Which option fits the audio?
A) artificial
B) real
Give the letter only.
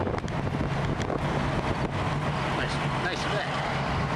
B